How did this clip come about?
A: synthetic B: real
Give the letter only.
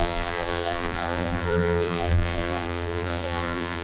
A